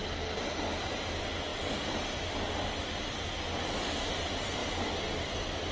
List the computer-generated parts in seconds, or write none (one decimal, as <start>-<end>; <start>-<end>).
0.6-4.6